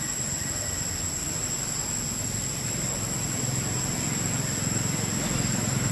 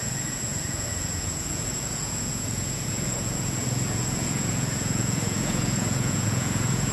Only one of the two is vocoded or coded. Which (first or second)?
second